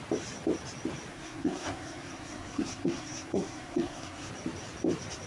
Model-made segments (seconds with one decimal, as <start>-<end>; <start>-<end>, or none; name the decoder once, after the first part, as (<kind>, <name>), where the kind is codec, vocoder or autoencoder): 1.1-4.3 (codec, SNAC)